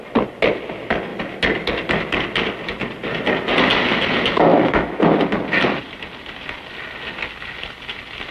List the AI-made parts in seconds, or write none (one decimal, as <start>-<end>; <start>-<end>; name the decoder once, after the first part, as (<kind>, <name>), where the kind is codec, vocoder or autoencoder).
4.5-5.0 (autoencoder, DAC-VAE)